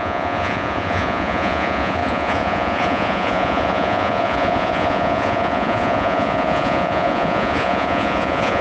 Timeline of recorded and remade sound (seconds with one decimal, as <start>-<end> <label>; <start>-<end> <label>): 0.0-8.6 remade